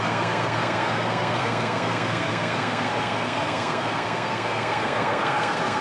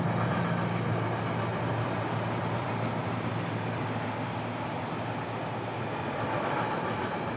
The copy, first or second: first